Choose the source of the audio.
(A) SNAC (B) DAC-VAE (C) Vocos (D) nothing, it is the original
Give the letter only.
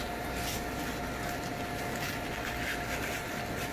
D